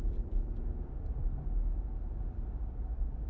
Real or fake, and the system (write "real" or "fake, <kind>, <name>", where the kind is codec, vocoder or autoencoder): fake, vocoder, BigVGAN v2